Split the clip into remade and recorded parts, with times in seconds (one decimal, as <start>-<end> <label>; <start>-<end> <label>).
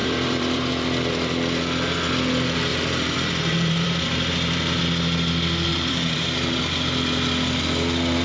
0.0-0.7 remade; 0.7-2.7 recorded; 2.7-4.8 remade; 4.8-5.7 recorded; 5.7-6.6 remade; 6.6-8.2 recorded